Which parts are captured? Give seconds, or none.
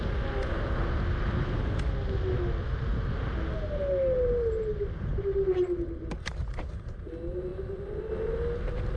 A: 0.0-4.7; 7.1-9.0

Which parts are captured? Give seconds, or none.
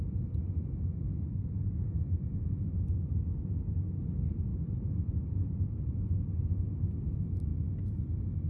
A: 0.0-1.3; 2.0-8.5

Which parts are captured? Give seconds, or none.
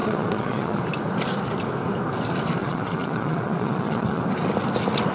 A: 0.8-2.6; 4.2-5.1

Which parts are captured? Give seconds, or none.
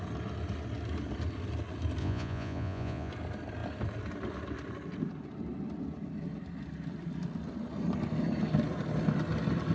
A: 0.0-2.0; 3.1-9.7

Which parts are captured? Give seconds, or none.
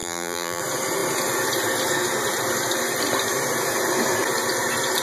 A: 0.6-5.0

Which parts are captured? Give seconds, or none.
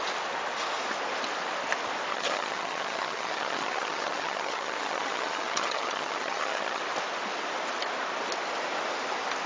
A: 0.0-2.1; 6.8-9.5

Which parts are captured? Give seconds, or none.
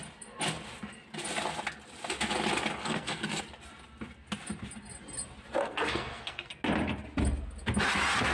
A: 0.0-2.8; 3.4-5.6; 6.5-8.3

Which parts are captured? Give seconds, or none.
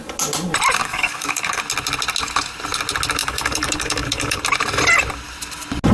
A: 0.0-0.8; 1.6-3.2; 4.4-5.9